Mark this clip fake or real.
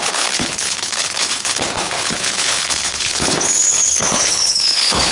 fake